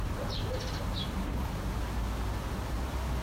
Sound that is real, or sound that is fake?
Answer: real